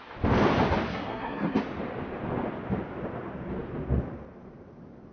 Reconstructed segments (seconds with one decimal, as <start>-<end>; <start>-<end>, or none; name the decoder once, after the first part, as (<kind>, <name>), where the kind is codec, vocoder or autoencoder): 0.9-1.6 (codec, SNAC)